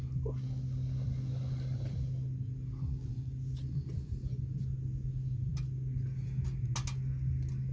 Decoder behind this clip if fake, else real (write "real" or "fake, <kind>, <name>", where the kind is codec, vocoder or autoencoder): real